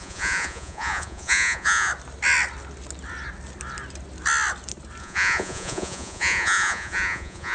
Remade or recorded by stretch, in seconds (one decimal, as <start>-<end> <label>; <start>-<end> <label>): 0.0-1.9 remade; 1.9-5.0 recorded; 5.0-7.5 remade